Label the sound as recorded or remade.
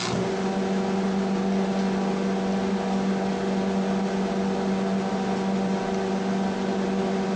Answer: recorded